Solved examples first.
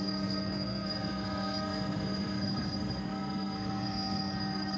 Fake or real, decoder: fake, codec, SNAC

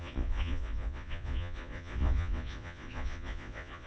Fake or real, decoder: fake, vocoder, Vocos